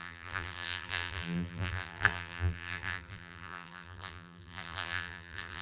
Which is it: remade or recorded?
remade